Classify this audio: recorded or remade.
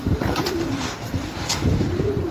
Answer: remade